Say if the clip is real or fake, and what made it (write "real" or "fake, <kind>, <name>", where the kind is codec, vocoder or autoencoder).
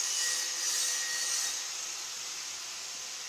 real